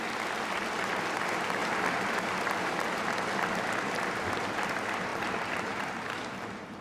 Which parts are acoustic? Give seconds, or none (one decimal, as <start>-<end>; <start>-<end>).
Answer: 0.0-6.8